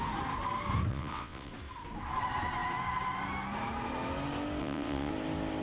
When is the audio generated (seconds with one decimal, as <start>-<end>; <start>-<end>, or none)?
0.9-1.5; 4.6-5.1